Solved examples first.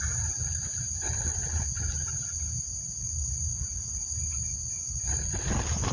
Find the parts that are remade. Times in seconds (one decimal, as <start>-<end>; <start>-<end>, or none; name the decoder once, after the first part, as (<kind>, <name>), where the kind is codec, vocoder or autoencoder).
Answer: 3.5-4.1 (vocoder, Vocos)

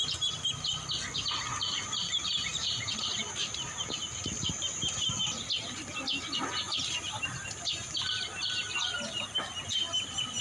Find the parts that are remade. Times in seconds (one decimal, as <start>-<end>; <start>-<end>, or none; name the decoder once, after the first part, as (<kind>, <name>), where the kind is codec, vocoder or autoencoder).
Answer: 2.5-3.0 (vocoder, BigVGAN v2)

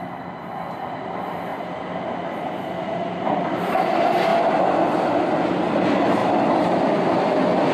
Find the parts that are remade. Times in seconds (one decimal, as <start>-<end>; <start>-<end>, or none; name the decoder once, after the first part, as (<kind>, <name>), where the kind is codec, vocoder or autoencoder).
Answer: none

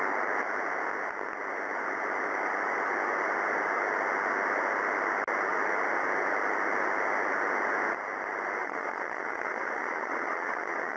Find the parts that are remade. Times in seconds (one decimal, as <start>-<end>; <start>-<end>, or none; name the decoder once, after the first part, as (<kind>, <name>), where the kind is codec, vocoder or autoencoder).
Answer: 8.6-11.0 (vocoder, Vocos)

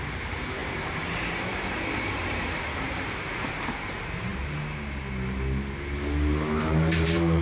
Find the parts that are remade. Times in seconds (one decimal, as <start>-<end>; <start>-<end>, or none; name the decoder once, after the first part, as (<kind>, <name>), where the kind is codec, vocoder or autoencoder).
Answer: 0.0-4.3 (vocoder, BigVGAN v2); 6.6-7.4